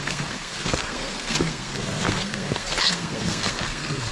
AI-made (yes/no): yes